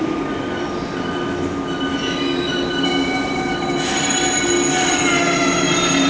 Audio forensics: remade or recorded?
recorded